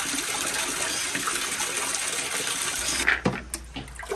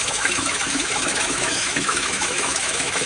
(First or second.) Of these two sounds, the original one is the first